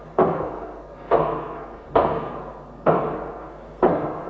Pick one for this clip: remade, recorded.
remade